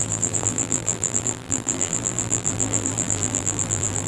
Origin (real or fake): fake